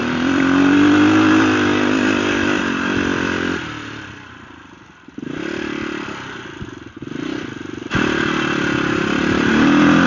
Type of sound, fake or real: fake